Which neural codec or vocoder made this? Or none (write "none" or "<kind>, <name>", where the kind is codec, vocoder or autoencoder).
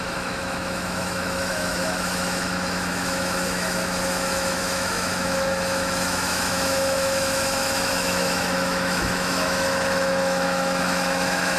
autoencoder, DAC-VAE